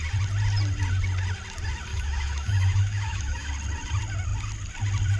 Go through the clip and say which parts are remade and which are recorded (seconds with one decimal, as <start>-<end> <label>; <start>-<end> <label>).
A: 0.0-1.9 recorded; 1.9-3.5 remade; 3.5-5.2 recorded